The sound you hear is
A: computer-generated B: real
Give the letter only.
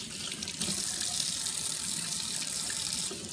B